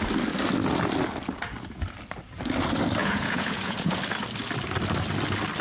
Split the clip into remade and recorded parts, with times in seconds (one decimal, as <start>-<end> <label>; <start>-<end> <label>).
0.0-3.0 recorded; 3.0-4.0 remade; 4.0-5.6 recorded